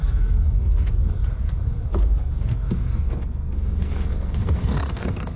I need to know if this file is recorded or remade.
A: remade